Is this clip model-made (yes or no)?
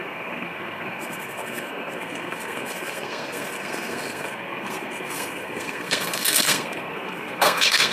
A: yes